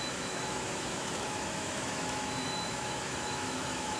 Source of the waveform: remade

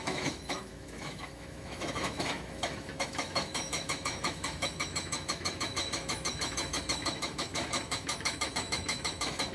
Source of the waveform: remade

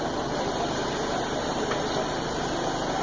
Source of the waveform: recorded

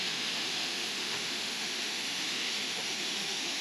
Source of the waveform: remade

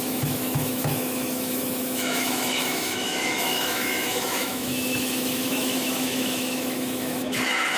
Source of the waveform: remade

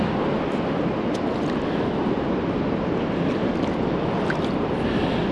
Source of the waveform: recorded